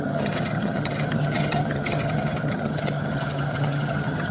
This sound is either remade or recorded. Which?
remade